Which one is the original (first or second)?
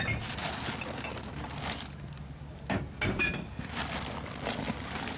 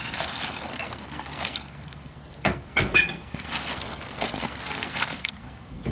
first